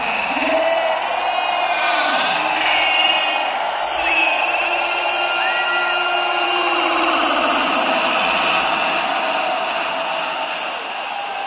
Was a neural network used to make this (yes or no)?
no